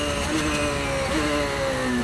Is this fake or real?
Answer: real